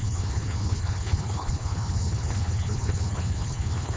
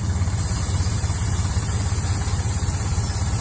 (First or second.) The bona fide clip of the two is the second